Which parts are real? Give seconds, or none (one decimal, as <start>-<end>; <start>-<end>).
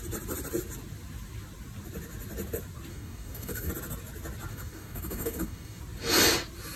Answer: 0.0-2.9; 3.7-4.5; 5.8-6.8